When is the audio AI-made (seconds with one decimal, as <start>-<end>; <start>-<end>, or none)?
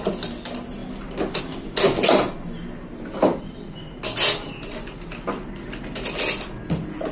none